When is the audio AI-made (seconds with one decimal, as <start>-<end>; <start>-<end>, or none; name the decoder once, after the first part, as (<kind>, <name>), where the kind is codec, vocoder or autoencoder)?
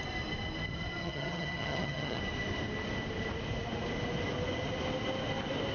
1.0-2.2 (vocoder, HiFi-GAN)